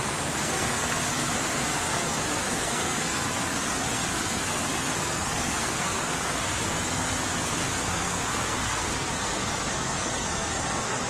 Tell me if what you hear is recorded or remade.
remade